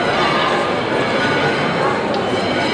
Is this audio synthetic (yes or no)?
no